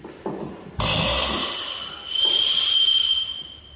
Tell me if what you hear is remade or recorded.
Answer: recorded